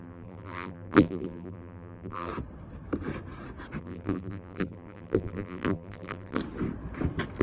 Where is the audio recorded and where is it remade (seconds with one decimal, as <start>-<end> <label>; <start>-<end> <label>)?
0.0-2.3 remade; 2.3-3.8 recorded; 3.8-6.4 remade; 6.4-7.4 recorded